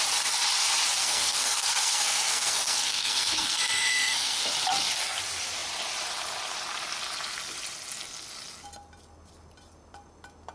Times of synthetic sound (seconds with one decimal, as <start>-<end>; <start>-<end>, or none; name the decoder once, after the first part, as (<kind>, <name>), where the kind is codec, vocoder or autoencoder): 1.0-4.4 (codec, SNAC)